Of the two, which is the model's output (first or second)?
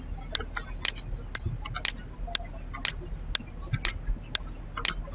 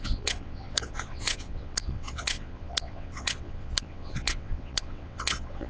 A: second